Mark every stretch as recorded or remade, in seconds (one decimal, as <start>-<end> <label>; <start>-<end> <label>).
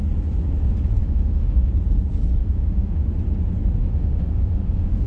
0.0-1.0 recorded; 1.0-1.7 remade; 1.7-2.4 recorded; 2.4-3.0 remade; 3.0-3.8 recorded; 3.8-5.1 remade